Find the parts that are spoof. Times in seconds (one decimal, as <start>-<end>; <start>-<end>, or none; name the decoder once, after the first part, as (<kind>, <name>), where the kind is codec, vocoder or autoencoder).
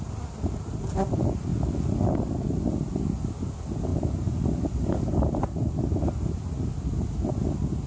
none